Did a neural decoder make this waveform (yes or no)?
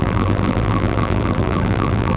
yes